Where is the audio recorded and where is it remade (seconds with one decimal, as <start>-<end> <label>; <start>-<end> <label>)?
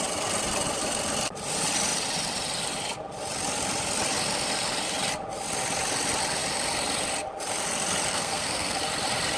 0.0-8.1 recorded; 8.1-8.8 remade; 8.8-9.4 recorded